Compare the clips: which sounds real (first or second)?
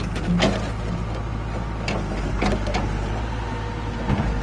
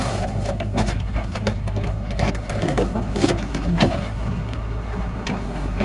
first